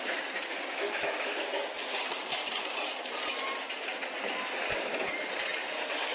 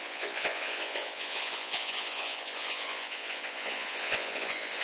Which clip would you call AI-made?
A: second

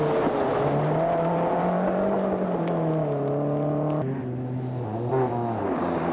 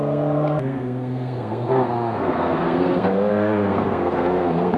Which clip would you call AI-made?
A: second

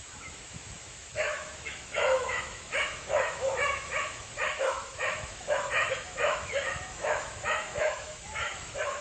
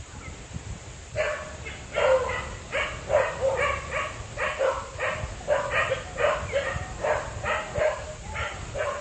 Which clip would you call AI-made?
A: first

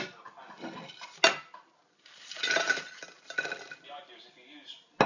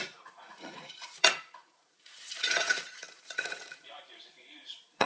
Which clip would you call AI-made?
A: second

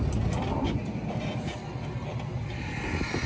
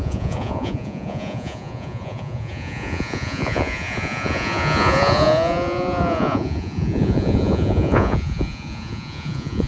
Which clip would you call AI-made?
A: second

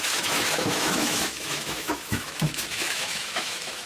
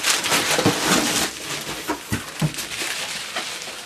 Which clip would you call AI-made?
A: first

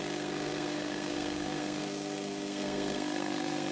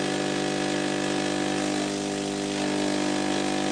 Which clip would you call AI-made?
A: first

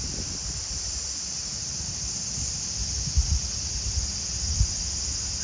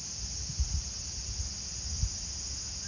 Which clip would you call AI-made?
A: first